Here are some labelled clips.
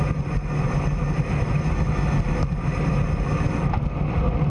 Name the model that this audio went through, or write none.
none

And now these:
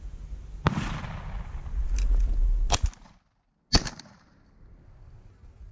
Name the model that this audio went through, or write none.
none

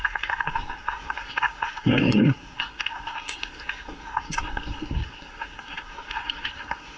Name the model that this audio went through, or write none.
codec, SNAC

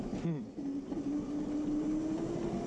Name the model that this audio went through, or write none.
none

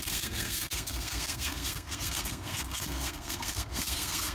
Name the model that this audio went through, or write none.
codec, SNAC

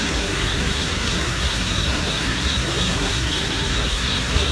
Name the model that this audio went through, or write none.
codec, SNAC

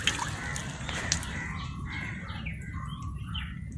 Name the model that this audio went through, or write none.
none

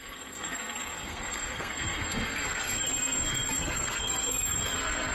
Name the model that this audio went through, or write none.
codec, SNAC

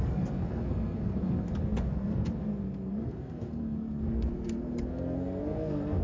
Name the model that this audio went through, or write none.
codec, SNAC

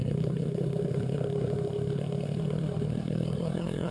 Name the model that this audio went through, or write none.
codec, SNAC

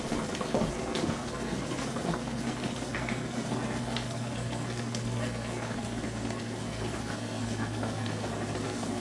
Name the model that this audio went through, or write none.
codec, SNAC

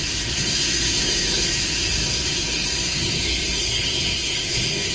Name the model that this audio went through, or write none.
codec, SNAC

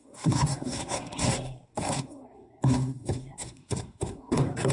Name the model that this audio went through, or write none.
codec, SNAC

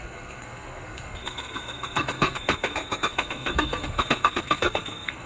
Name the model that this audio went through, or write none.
codec, SNAC